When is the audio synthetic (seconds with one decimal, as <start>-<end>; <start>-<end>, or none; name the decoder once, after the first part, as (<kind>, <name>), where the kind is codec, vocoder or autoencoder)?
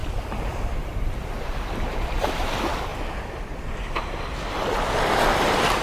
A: 0.8-2.9 (vocoder, BigVGAN v2); 5.3-5.8